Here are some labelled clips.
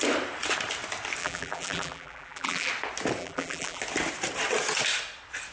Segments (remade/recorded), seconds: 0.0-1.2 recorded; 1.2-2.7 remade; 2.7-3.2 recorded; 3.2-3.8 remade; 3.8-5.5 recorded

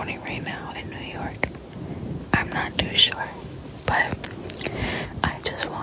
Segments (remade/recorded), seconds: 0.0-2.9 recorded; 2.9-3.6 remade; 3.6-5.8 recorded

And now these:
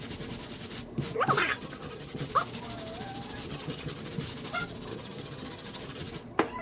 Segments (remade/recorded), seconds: 0.0-1.4 recorded; 1.4-2.3 remade; 2.3-3.5 recorded; 3.5-4.1 remade; 4.1-4.9 recorded; 4.9-6.0 remade; 6.0-6.6 recorded